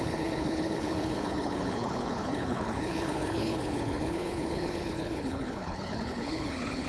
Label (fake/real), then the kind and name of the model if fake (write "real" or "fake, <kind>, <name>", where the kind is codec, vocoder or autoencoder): fake, codec, HILCodec